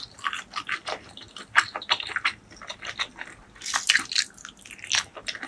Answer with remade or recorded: recorded